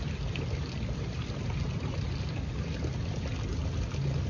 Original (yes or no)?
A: yes